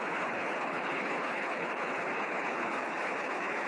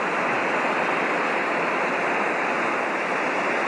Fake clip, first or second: first